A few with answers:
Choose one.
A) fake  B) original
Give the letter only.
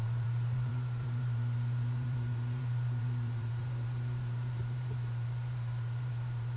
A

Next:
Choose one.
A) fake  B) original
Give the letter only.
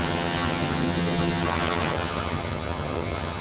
A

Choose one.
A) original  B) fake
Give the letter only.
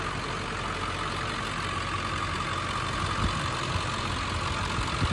A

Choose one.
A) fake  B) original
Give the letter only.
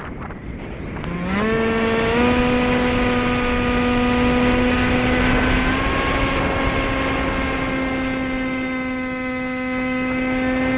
B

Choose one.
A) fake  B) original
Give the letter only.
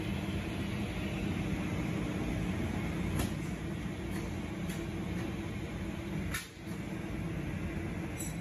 B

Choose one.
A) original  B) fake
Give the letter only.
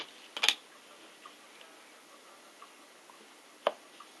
A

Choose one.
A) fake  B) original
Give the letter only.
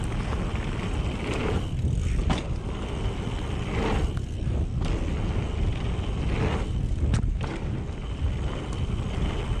B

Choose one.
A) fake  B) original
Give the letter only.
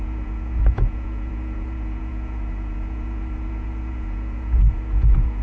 A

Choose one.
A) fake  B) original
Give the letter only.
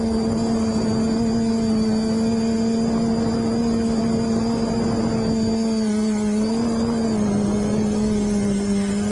B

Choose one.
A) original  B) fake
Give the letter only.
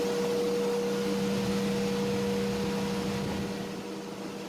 A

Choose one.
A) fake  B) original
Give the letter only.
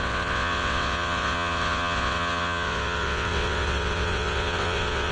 A